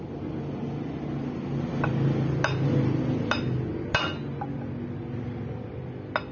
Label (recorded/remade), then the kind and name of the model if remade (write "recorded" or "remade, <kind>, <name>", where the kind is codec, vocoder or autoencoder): recorded